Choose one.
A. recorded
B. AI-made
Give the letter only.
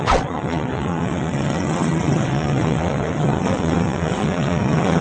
B